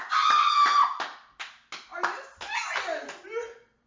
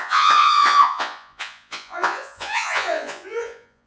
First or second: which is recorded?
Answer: first